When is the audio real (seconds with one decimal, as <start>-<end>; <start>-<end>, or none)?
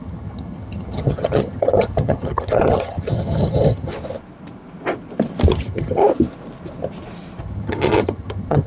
3.9-5.5; 6.0-7.4